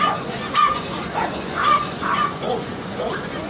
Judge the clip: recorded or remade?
remade